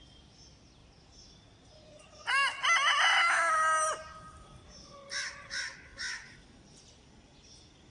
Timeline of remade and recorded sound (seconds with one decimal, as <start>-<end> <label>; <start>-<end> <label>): 0.0-5.9 recorded; 5.9-7.1 remade; 7.1-7.9 recorded